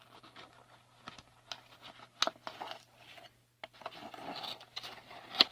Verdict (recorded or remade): recorded